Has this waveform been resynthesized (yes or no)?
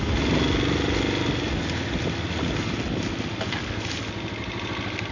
no